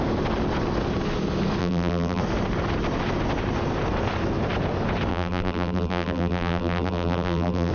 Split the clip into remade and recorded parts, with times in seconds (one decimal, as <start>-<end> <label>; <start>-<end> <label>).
0.0-1.6 recorded; 1.6-2.2 remade; 2.2-5.1 recorded; 5.1-7.7 remade